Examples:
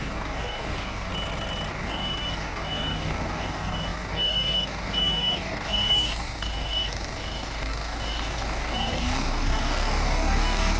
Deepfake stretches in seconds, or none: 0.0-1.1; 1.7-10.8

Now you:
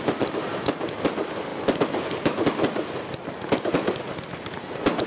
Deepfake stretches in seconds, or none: none

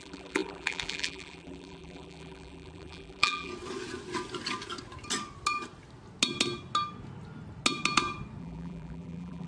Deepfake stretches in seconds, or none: 0.0-3.5; 8.4-9.5

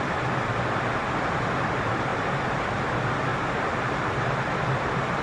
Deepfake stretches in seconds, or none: 2.1-2.9

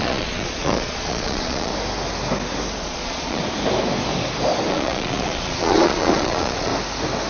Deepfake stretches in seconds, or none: 0.0-1.7; 2.8-3.4; 4.7-6.7

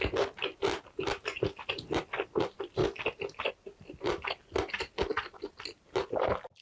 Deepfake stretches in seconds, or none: none